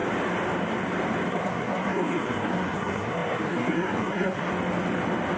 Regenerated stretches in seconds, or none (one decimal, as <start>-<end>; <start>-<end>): 1.3-4.5